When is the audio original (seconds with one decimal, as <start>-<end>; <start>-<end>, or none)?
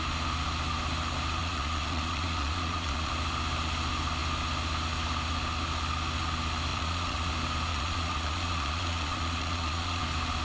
0.0-1.4; 3.1-6.7; 7.3-7.7; 10.0-10.4